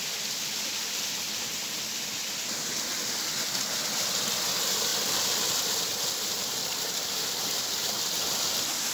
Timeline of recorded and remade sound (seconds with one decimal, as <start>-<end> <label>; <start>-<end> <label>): 0.0-8.9 recorded